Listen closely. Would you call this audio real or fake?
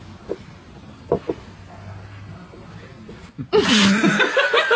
real